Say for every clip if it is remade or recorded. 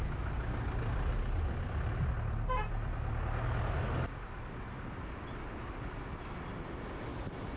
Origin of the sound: recorded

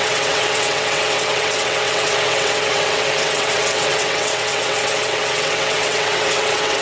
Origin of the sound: remade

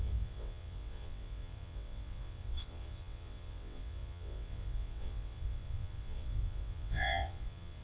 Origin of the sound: remade